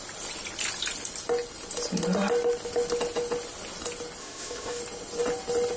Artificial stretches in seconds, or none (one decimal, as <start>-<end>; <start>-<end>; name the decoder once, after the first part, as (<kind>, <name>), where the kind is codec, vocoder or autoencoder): 4.2-4.8 (autoencoder, DAC-VAE)